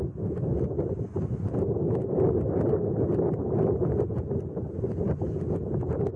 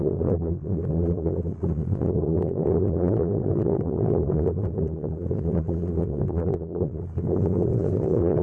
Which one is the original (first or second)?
first